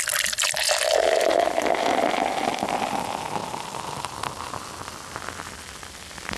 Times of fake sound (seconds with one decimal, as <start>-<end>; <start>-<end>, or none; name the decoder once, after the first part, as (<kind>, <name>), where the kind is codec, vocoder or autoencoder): none